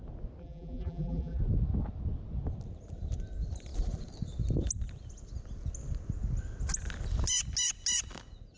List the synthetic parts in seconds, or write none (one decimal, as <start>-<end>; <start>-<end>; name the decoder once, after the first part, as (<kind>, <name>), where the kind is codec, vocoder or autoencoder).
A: 0.4-1.4 (vocoder, BigVGAN v2)